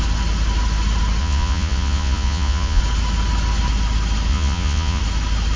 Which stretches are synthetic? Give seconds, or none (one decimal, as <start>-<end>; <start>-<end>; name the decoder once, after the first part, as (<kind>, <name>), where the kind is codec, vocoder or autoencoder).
1.2-2.8 (vocoder, Vocos); 4.3-5.0

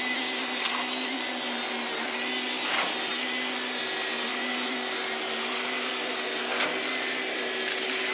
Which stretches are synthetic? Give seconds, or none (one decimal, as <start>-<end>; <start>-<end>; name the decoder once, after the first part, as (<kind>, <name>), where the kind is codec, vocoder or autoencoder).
none